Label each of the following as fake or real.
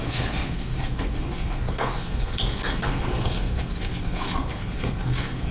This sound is fake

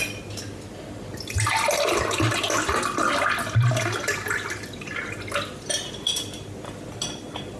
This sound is real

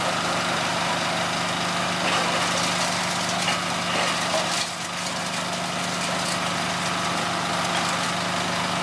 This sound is real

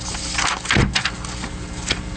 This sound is real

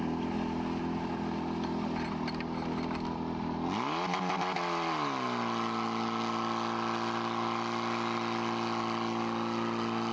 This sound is real